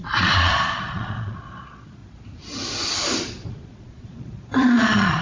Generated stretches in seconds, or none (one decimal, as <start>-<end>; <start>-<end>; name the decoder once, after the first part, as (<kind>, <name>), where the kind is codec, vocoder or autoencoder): 0.0-2.0 (vocoder, Vocos); 3.5-5.2